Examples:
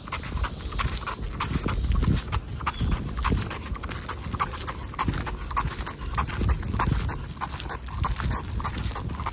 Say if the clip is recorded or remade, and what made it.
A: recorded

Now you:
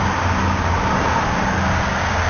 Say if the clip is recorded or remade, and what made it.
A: recorded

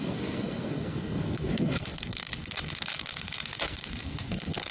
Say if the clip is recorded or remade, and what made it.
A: remade, codec, SNAC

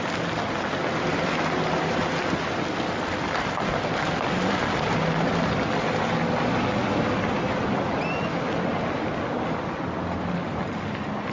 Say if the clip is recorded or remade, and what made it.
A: recorded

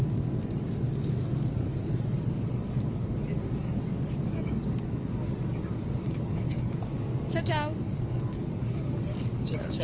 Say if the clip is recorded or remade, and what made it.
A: remade, codec, DAC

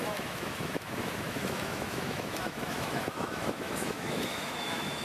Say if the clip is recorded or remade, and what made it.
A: remade, autoencoder, DAC-VAE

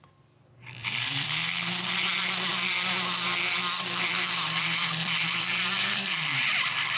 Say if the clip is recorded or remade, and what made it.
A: remade, vocoder, BigVGAN v2